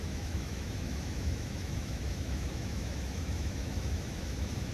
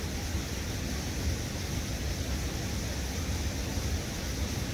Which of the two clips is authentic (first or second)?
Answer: second